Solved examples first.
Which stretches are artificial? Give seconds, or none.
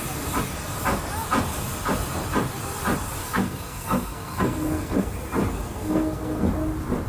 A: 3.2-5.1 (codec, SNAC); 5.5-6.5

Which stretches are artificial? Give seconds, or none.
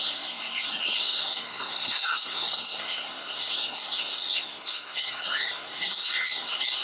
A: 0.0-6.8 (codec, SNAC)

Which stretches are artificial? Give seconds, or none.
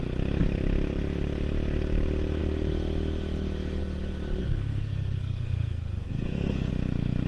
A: 4.4-6.7 (codec, SNAC)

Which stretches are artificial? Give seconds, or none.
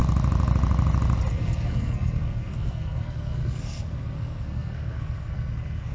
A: 1.3-5.9 (codec, SNAC)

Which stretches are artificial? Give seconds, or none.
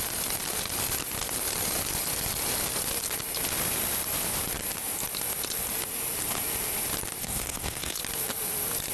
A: 7.2-8.0 (codec, SNAC)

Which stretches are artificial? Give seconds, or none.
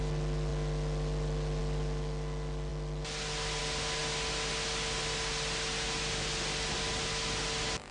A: none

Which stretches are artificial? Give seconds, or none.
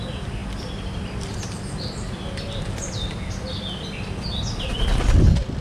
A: none